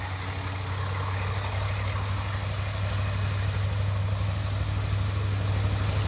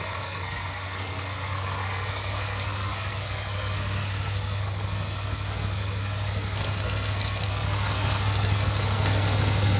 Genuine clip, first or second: first